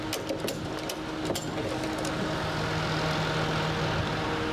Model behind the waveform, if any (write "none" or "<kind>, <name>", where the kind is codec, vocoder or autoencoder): none